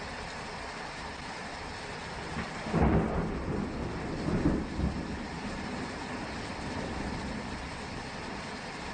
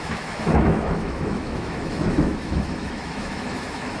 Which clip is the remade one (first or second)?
second